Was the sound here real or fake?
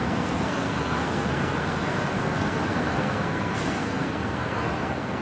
fake